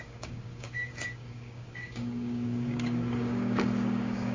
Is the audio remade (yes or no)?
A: yes